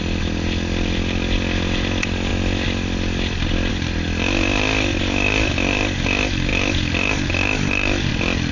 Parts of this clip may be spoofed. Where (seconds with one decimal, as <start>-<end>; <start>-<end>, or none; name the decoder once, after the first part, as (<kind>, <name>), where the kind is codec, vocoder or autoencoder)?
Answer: none